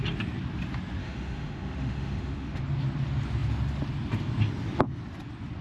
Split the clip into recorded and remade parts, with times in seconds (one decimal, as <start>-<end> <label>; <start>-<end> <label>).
0.0-1.0 recorded; 1.0-2.6 remade; 2.6-5.6 recorded